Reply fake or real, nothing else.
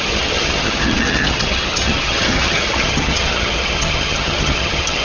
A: fake